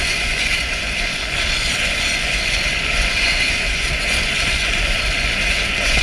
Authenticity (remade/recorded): remade